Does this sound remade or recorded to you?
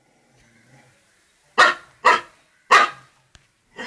recorded